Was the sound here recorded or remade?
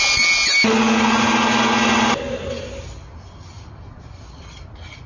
recorded